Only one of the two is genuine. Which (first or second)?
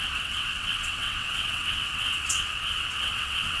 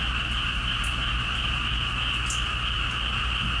second